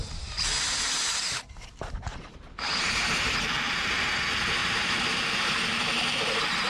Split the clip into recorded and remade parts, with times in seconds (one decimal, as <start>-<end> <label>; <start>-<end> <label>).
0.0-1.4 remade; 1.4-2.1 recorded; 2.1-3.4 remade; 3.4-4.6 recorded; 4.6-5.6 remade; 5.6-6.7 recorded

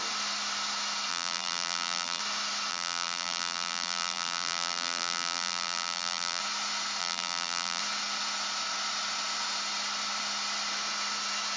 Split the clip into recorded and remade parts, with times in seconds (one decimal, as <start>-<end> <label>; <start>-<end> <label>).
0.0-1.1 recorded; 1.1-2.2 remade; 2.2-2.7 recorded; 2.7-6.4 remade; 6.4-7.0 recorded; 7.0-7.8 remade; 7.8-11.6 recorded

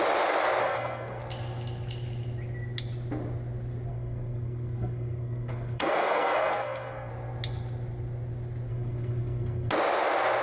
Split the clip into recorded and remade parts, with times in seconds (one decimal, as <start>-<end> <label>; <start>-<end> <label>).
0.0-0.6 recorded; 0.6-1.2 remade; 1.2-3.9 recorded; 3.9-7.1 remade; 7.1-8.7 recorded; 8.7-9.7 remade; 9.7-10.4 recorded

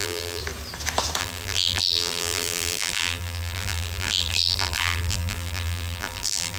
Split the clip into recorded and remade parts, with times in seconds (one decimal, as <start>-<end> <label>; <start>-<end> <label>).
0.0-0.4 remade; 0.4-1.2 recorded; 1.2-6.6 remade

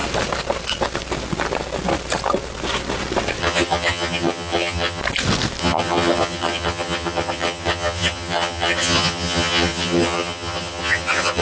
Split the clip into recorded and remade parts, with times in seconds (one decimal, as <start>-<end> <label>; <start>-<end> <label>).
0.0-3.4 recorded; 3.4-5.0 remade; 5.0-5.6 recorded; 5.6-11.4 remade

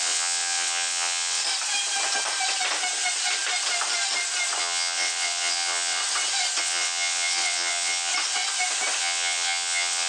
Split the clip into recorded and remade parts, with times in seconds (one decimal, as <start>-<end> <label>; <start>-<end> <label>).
0.0-1.4 remade; 1.4-4.6 recorded; 4.6-6.0 remade; 6.0-6.6 recorded; 6.6-8.1 remade; 8.1-9.0 recorded; 9.0-10.1 remade

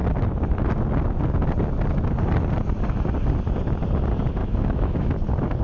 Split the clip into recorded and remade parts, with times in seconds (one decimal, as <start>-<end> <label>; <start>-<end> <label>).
0.0-4.4 recorded; 4.4-5.1 remade; 5.1-5.6 recorded

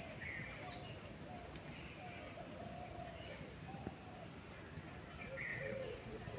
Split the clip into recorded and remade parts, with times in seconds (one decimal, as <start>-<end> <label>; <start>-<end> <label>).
0.0-5.5 recorded; 5.5-6.4 remade